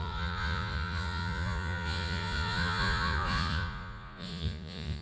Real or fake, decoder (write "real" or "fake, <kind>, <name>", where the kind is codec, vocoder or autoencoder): fake, vocoder, Vocos